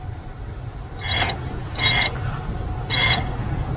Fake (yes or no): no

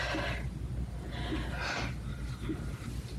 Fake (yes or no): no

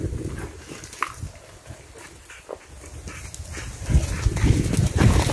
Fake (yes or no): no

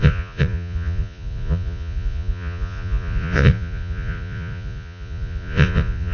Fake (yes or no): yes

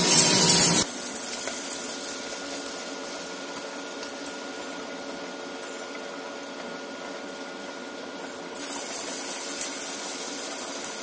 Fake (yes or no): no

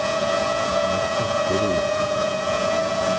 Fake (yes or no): yes